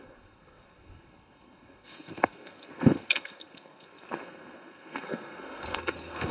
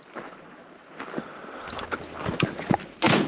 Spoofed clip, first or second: first